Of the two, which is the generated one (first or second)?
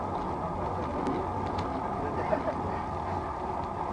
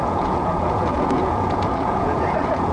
second